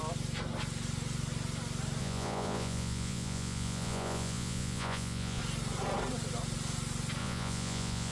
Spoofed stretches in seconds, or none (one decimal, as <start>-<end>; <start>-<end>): 2.0-5.4; 7.2-8.1